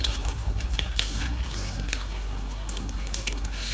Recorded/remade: remade